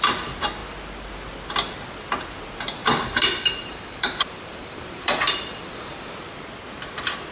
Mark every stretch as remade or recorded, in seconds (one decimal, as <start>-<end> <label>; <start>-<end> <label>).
0.0-2.8 recorded; 2.8-6.1 remade; 6.1-7.3 recorded